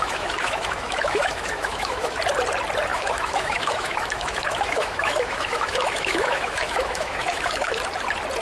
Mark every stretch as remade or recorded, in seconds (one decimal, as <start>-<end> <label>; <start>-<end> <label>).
0.0-2.2 remade; 2.2-2.9 recorded; 2.9-7.8 remade; 7.8-8.4 recorded